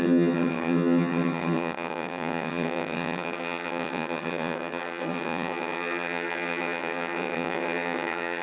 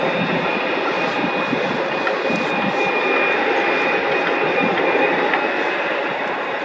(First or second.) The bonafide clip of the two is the second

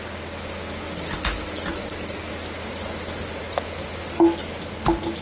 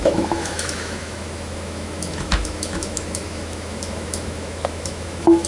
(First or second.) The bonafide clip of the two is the first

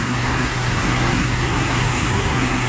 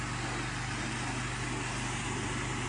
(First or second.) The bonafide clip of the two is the second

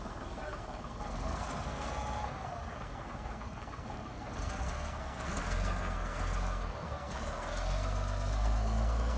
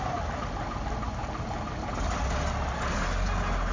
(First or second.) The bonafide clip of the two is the second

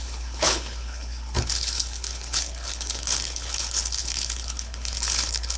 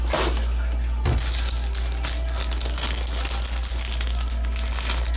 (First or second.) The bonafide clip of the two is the second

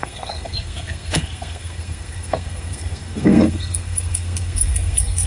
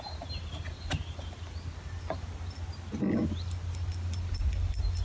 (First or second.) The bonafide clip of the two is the second